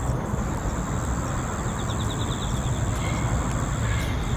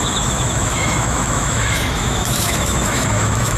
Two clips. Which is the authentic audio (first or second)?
first